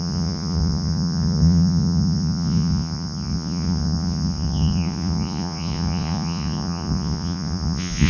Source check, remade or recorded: remade